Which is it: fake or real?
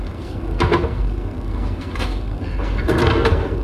fake